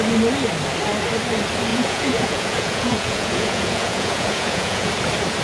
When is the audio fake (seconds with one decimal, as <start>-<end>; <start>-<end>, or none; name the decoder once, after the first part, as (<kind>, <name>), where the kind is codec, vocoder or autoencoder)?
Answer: 1.7-4.9 (vocoder, Vocos)